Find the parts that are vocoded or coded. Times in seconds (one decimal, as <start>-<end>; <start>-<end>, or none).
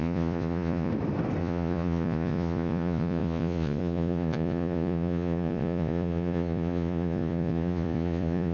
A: 0.0-0.9; 1.4-8.5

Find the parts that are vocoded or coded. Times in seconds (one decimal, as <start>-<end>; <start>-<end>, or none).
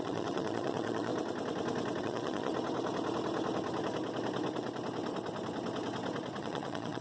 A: 0.0-1.1; 2.0-2.5; 6.4-7.0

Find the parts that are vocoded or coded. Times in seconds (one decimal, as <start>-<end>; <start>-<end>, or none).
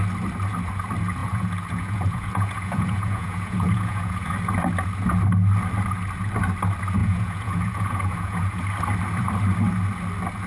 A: 1.2-4.3; 7.0-8.6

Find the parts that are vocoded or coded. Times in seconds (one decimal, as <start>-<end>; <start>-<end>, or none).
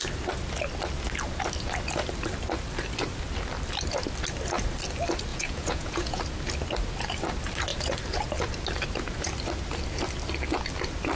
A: 5.3-6.2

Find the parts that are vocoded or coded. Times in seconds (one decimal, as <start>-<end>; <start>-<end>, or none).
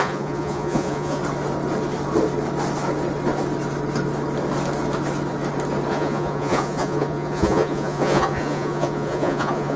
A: 0.0-1.2; 5.9-9.8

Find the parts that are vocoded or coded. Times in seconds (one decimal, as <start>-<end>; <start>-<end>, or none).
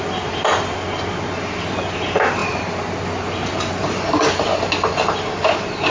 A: none